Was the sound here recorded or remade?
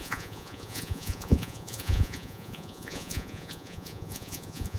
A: remade